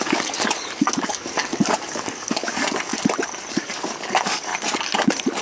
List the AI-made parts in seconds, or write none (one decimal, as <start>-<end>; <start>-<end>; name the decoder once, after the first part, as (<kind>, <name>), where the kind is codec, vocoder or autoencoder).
0.0-2.9 (codec, DAC); 3.5-4.5